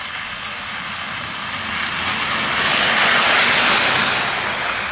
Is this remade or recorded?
recorded